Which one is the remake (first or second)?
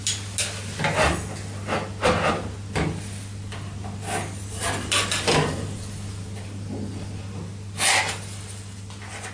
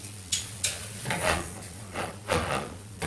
second